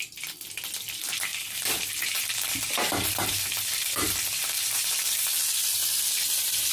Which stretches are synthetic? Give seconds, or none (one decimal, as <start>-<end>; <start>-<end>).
1.3-5.3